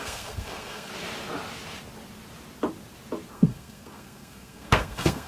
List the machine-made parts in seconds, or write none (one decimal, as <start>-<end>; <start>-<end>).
0.0-0.9; 3.3-5.3